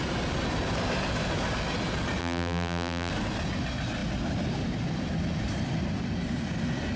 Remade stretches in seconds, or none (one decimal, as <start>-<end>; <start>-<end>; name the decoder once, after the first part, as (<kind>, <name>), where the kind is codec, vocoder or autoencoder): 2.2-3.1 (vocoder, BigVGAN v2)